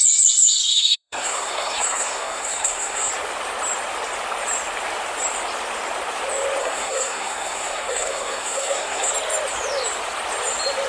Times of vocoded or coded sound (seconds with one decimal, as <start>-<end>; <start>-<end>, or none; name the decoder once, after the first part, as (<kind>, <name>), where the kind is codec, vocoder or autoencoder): 0.7-3.1 (codec, SNAC); 6.6-9.1